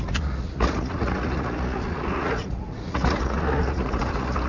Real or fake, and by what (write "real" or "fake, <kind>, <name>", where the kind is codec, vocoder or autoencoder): fake, vocoder, Vocos